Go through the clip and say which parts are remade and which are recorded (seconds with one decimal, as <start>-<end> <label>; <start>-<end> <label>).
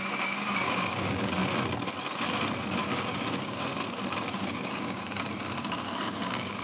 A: 0.0-1.4 remade; 1.4-2.8 recorded; 2.8-3.7 remade; 3.7-4.2 recorded; 4.2-6.6 remade